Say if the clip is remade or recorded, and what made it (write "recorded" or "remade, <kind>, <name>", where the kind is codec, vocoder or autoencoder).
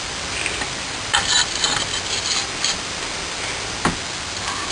recorded